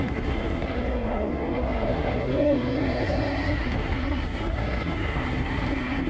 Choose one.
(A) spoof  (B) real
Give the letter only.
A